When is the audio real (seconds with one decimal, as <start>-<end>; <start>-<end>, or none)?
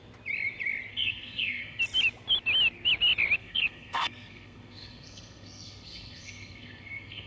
0.0-0.9; 1.8-3.4